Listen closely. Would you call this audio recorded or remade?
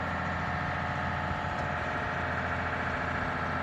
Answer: recorded